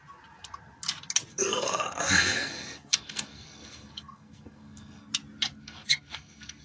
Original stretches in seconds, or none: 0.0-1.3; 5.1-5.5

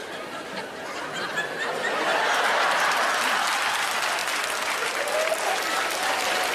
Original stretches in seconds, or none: 0.0-6.5